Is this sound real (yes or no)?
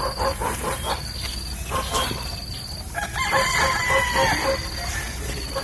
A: yes